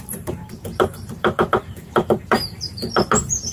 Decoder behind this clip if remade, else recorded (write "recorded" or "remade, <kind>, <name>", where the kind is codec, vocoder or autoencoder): remade, vocoder, BigVGAN v2